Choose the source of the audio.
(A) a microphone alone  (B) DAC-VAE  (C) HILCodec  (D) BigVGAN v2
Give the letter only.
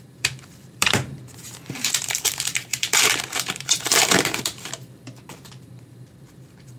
D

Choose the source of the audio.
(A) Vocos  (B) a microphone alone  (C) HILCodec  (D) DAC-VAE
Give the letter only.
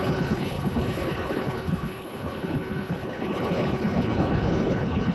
C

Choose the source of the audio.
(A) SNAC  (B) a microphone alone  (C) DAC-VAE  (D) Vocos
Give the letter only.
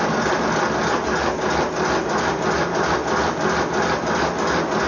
B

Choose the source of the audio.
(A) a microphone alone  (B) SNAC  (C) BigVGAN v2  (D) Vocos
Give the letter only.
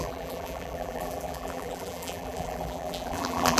C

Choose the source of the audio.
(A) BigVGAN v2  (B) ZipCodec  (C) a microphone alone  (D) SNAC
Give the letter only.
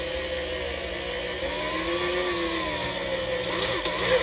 C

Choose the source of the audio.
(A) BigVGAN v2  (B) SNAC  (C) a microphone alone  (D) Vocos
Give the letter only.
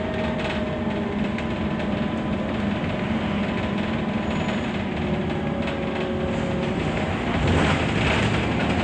C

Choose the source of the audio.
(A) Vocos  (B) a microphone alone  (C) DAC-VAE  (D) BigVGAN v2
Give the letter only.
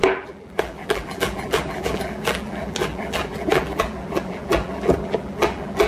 D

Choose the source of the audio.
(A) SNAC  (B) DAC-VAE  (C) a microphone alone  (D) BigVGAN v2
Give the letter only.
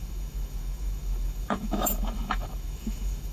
B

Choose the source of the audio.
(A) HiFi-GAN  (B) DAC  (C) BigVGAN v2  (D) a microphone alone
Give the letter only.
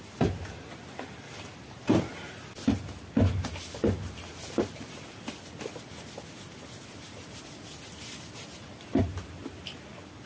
D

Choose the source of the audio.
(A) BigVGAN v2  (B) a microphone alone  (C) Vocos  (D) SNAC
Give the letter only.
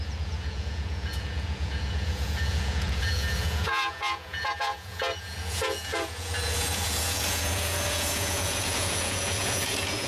C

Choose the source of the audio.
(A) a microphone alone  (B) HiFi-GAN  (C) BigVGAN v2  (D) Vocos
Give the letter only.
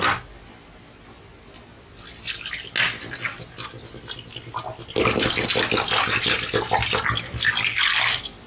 A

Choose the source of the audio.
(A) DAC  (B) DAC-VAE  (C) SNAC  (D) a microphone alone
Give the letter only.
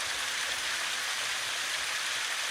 D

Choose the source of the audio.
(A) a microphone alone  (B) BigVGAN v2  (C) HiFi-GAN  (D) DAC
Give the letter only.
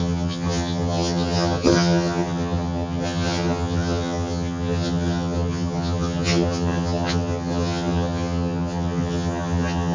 C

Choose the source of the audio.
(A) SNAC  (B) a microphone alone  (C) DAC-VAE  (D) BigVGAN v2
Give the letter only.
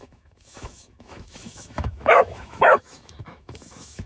C